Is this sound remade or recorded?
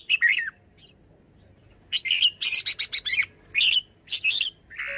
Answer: recorded